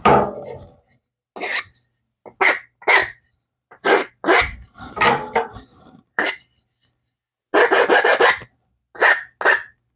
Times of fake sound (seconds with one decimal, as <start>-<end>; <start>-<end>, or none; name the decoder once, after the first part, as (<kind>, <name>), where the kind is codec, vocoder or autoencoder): 3.0-6.4 (vocoder, BigVGAN v2)